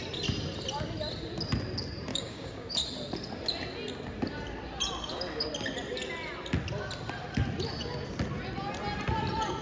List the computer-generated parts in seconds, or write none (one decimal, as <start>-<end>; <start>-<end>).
2.1-2.7